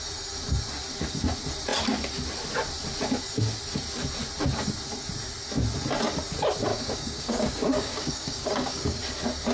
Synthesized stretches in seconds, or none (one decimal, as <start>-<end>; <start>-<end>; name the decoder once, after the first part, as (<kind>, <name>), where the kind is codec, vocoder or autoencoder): 6.7-9.0 (codec, DAC)

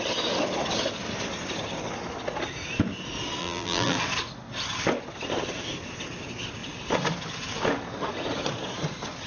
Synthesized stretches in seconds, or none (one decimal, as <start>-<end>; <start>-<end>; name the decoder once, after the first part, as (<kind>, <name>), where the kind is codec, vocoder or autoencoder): 3.4-4.0 (vocoder, BigVGAN v2)

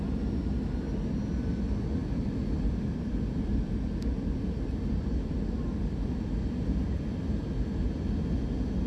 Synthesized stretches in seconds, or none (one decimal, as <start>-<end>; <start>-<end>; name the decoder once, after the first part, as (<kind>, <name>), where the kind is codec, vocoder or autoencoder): 2.0-7.2 (vocoder, BigVGAN v2)

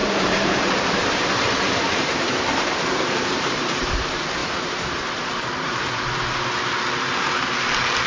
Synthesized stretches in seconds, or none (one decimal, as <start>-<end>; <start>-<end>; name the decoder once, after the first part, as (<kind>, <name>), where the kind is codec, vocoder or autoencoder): 0.0-3.9 (vocoder, BigVGAN v2); 4.4-5.9

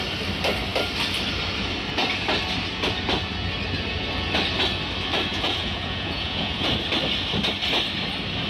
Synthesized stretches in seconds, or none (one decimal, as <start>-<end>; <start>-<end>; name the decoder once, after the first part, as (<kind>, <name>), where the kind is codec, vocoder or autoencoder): 5.3-6.7 (vocoder, Vocos)

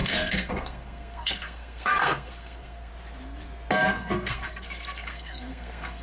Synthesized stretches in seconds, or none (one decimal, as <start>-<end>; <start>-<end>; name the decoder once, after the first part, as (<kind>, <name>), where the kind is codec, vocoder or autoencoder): 0.0-2.9 (codec, SNAC); 3.9-6.0

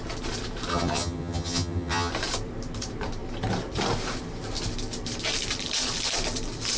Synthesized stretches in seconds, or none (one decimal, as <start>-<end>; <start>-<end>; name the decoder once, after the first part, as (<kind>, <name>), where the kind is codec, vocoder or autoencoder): 0.7-2.1 (vocoder, HiFi-GAN)

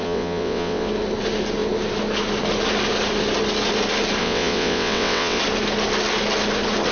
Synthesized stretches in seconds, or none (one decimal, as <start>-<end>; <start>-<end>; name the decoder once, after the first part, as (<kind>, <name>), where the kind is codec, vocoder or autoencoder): 0.0-0.9 (vocoder, WaveNeXt); 4.2-5.4